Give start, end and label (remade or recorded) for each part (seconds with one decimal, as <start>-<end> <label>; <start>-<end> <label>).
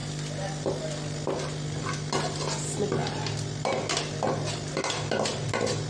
0.0-5.9 recorded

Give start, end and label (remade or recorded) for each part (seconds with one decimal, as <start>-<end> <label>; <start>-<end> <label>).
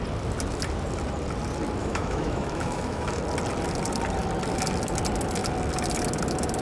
0.0-1.8 recorded; 1.8-3.2 remade; 3.2-6.6 recorded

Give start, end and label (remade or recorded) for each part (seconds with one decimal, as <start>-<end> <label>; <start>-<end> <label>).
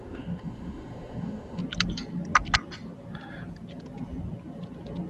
0.0-1.6 remade; 1.6-5.1 recorded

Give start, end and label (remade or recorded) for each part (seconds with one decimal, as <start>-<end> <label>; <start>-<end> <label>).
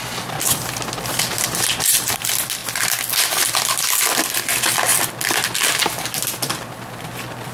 0.0-7.5 recorded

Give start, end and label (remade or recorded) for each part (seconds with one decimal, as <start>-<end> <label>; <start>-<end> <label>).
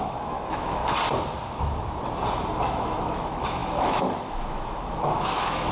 0.0-0.8 remade; 0.8-2.7 recorded; 2.7-5.7 remade